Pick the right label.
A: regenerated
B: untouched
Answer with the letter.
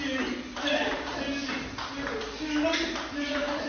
B